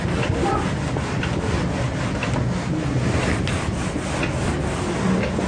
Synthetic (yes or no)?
no